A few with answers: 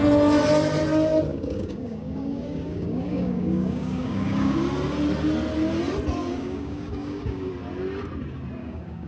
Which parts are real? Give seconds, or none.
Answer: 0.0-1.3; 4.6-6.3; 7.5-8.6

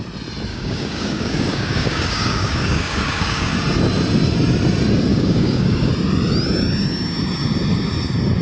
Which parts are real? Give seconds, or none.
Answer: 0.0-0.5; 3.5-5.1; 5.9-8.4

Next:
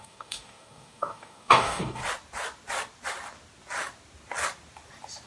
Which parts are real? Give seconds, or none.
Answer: 2.0-5.3

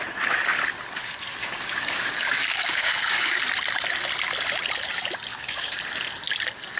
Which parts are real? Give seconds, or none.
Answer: 0.0-1.4; 3.4-5.3; 5.8-6.8

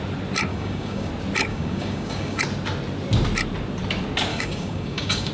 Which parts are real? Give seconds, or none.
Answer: 0.0-0.5; 1.1-1.5; 2.4-4.3

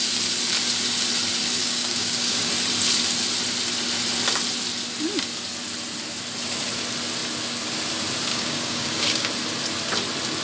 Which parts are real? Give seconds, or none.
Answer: 0.0-1.6; 2.5-8.3; 9.3-10.4